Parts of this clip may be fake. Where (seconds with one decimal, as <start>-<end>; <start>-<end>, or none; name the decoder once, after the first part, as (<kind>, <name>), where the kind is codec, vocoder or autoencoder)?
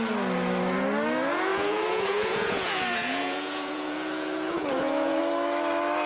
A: 1.5-5.2 (vocoder, Vocos)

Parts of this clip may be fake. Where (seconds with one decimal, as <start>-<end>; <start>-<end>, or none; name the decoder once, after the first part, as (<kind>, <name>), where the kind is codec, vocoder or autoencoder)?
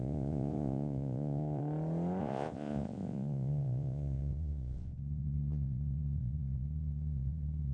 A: 0.0-1.6 (vocoder, Vocos); 2.2-7.7